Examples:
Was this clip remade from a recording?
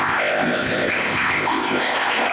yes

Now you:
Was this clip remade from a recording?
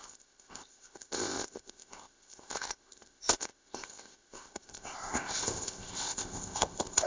yes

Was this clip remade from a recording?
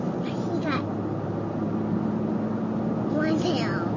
no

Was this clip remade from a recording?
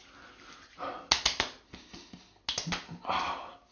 no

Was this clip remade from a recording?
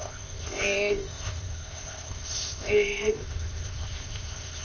yes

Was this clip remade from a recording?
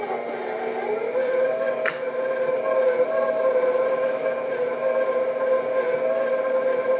no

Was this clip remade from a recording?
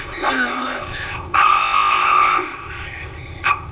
yes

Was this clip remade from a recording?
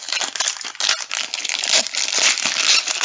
no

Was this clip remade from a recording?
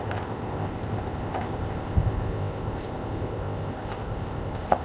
yes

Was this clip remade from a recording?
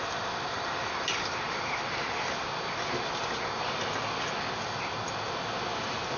no